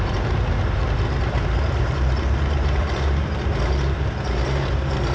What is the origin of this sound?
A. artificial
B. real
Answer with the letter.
A